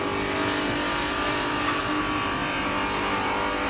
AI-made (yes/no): no